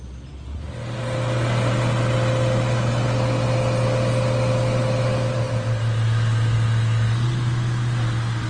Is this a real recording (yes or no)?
yes